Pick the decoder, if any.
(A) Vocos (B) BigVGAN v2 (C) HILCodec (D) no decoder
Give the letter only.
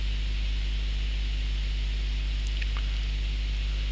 D